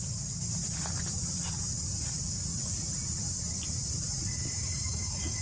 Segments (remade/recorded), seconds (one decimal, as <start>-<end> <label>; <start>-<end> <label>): 0.0-0.6 recorded; 0.6-1.6 remade; 1.6-2.5 recorded; 2.5-5.4 remade